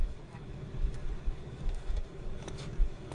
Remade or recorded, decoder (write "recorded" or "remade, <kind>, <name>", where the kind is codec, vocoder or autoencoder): remade, codec, DAC